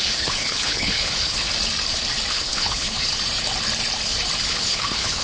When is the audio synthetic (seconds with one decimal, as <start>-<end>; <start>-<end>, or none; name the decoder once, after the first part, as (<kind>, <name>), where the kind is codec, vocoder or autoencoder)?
0.0-1.5 (codec, HILCodec); 2.3-3.1; 4.5-5.2